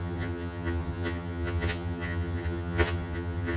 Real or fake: fake